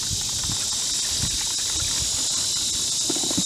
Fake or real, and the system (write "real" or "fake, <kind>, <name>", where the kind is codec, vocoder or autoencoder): real